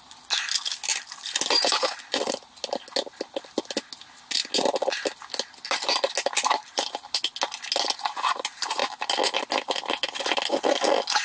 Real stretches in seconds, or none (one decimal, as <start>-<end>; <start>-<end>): 0.0-11.2